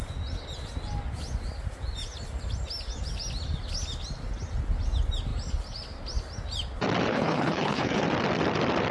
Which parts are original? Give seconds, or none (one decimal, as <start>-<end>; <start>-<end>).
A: 0.0-7.1; 8.0-8.9

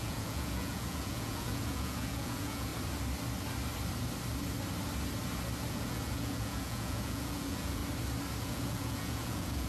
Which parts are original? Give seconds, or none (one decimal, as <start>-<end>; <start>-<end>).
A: 2.7-5.7; 7.8-8.4

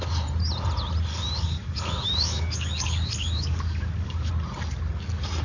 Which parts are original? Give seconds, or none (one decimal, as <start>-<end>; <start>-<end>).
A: 0.0-1.1; 4.3-5.4

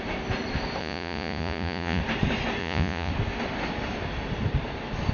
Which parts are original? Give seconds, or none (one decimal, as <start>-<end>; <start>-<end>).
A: 0.0-0.8; 2.0-2.6; 3.1-5.1

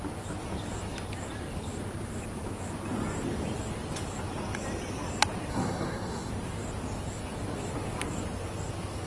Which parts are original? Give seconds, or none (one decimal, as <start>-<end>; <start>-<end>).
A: 0.0-5.5; 6.3-9.1

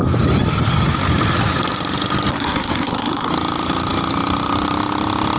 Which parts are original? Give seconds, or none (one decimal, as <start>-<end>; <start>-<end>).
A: 0.0-2.3; 3.3-5.4

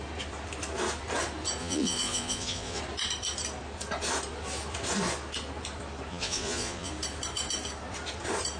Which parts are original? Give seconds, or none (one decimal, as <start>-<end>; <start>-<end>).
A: 0.0-1.6; 2.8-6.1; 6.9-8.6

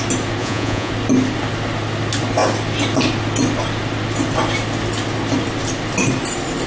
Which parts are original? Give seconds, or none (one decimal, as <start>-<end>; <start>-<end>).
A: 0.0-0.4; 0.9-6.7